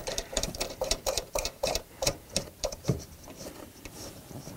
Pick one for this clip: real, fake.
fake